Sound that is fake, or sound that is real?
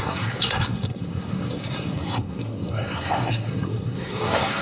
fake